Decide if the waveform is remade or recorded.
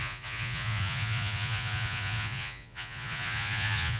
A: remade